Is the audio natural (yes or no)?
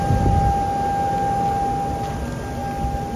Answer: yes